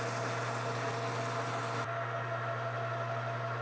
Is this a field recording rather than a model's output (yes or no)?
yes